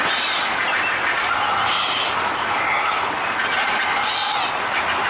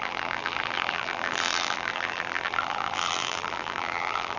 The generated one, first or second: second